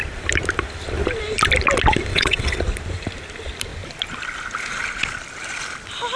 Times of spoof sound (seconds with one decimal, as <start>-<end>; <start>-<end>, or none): 2.1-2.6